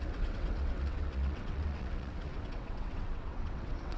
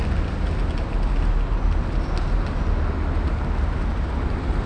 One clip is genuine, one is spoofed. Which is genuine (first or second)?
second